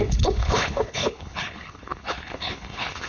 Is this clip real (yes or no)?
no